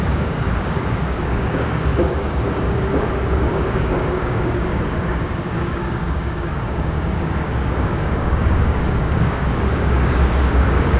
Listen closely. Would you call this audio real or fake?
fake